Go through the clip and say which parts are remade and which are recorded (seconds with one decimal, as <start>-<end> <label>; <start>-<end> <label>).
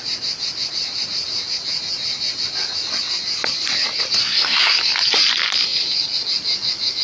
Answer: 0.0-4.2 recorded; 4.2-4.8 remade; 4.8-7.0 recorded